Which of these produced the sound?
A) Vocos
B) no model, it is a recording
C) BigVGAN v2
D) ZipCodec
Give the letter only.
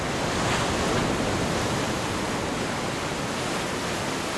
B